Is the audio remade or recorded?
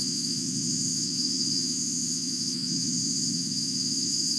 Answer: remade